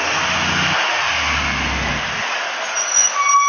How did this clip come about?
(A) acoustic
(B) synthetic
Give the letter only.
A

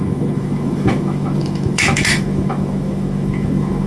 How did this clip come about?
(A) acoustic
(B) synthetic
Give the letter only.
B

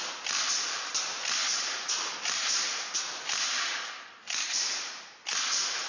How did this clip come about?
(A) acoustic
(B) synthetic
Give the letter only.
A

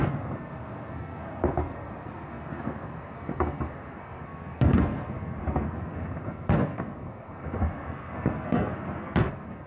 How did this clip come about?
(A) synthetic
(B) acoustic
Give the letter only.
A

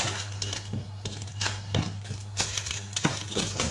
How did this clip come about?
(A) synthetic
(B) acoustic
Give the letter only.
A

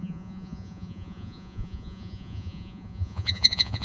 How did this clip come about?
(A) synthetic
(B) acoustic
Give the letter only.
A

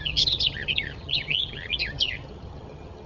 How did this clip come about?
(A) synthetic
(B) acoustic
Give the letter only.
A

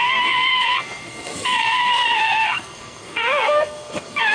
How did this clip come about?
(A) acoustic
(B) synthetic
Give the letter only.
B